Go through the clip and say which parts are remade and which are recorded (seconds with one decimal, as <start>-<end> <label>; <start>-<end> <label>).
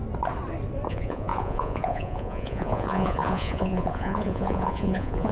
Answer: 0.0-0.9 recorded; 0.9-5.3 remade